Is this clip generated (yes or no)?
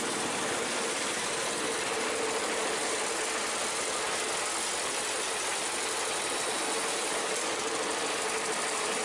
no